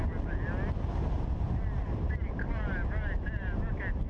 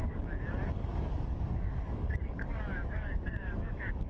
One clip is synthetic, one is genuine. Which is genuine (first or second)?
first